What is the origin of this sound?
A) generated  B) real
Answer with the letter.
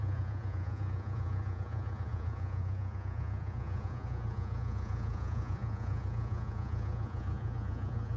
A